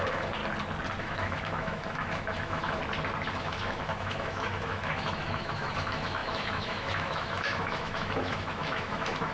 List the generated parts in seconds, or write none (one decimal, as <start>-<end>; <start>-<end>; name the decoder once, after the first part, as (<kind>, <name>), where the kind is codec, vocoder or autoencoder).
0.0-0.4 (autoencoder, DAC-VAE); 1.0-2.8; 3.3-9.3